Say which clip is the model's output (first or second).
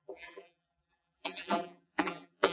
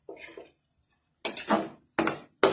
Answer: first